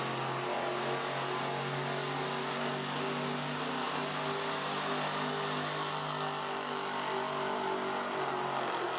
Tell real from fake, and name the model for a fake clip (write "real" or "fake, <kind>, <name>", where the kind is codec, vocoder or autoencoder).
real